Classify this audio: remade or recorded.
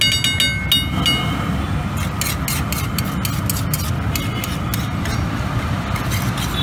recorded